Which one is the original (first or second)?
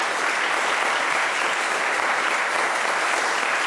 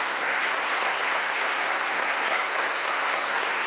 first